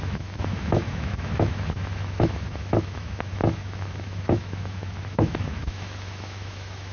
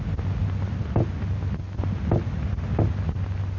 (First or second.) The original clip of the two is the second